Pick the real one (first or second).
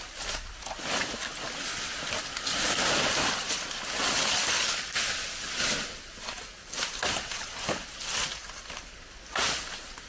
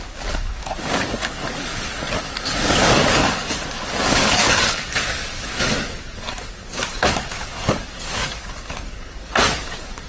first